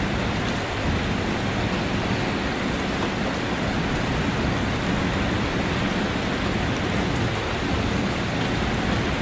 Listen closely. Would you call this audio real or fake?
real